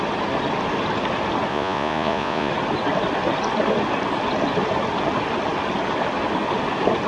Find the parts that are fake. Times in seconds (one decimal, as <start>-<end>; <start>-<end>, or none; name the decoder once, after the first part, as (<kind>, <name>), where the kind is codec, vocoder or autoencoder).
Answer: 1.5-2.5 (vocoder, Vocos)